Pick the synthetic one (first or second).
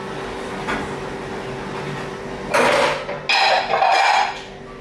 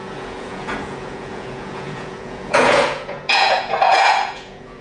second